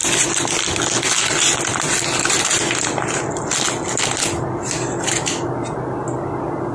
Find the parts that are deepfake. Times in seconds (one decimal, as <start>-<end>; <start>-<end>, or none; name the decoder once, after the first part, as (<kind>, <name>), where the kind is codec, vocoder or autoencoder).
none